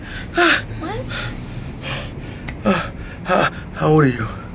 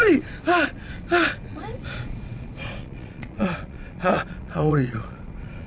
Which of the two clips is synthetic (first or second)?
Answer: second